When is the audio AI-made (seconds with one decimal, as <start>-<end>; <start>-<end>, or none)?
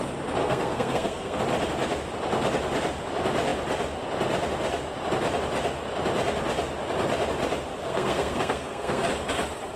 0.4-1.4; 7.8-9.1